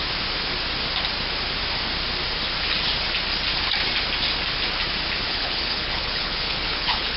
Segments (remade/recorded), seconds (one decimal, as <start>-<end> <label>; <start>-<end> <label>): 0.0-5.3 recorded; 5.3-7.2 remade